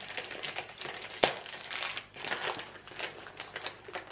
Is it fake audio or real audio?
real